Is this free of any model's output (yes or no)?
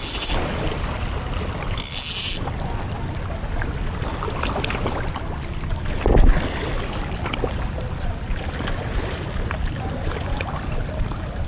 yes